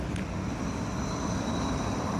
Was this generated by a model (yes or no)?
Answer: no